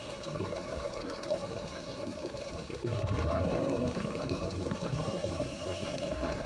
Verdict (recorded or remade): remade